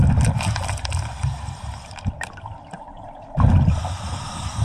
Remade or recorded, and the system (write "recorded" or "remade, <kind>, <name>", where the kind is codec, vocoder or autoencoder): recorded